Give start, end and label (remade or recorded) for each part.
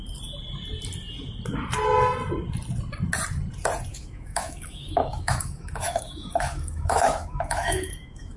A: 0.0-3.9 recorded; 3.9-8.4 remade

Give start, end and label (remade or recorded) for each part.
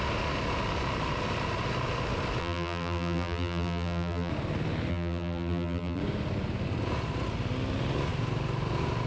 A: 0.0-2.4 recorded; 2.4-4.3 remade; 4.3-4.9 recorded; 4.9-6.0 remade; 6.0-9.1 recorded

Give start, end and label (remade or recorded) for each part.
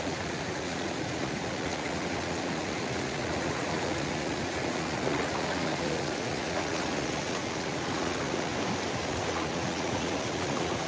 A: 0.0-8.5 remade; 8.5-9.0 recorded; 9.0-10.9 remade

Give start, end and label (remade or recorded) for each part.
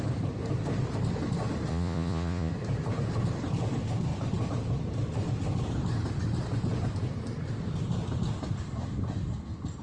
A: 0.0-1.7 recorded; 1.7-2.5 remade; 2.5-9.8 recorded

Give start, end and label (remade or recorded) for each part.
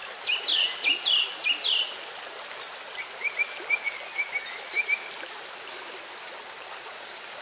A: 0.0-6.4 recorded; 6.4-7.4 remade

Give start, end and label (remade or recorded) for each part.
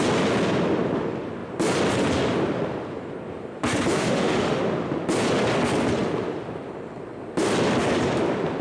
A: 0.0-4.0 recorded; 4.0-4.6 remade; 4.6-8.6 recorded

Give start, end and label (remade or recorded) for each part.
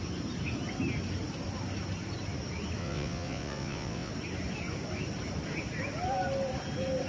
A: 0.0-2.8 recorded; 2.8-4.1 remade; 4.1-7.1 recorded